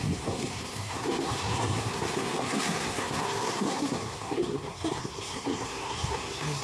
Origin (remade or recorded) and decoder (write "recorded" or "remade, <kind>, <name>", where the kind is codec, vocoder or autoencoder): remade, codec, SNAC